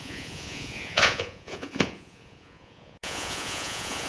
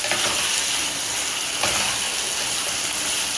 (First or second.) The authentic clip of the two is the second